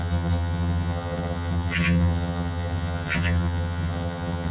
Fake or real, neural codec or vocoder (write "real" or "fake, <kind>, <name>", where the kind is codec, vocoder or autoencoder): fake, vocoder, HiFi-GAN